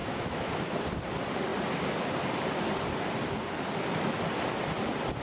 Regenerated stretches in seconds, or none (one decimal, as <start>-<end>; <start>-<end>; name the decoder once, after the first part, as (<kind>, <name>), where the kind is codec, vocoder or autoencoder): 0.0-0.5 (autoencoder, DAC-VAE)